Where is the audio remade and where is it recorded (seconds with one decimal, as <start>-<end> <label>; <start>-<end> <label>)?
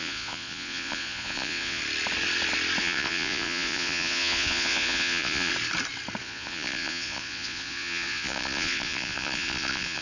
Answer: 0.0-1.8 remade; 1.8-2.8 recorded; 2.8-5.5 remade; 5.5-6.2 recorded; 6.2-10.0 remade